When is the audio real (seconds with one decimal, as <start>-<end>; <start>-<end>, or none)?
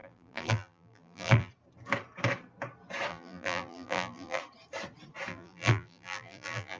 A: 1.5-3.1; 4.4-5.3